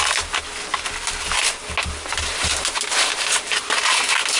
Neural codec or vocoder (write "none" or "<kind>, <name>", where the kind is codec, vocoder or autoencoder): none